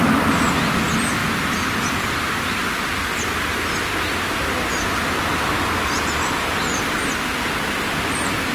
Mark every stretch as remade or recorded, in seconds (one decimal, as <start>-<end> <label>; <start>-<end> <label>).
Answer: 0.0-8.5 recorded